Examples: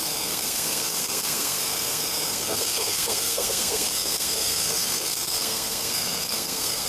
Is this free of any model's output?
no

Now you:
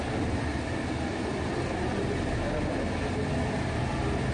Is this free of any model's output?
yes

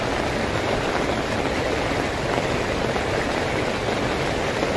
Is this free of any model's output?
yes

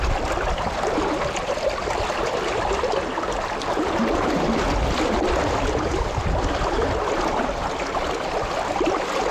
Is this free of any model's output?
yes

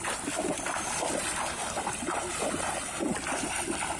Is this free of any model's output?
yes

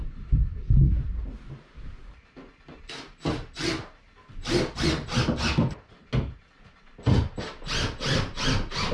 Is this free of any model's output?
yes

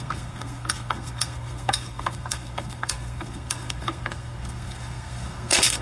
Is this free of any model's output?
no